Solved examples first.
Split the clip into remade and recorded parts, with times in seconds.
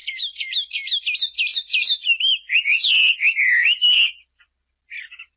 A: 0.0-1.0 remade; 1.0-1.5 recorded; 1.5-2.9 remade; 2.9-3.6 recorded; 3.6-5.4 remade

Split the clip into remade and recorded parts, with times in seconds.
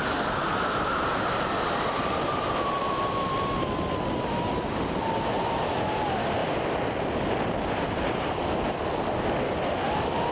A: 0.0-6.4 recorded; 6.4-9.4 remade; 9.4-10.3 recorded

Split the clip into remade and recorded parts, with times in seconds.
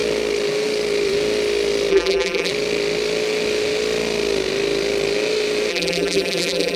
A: 0.0-1.9 recorded; 1.9-2.5 remade; 2.5-5.7 recorded; 5.7-6.8 remade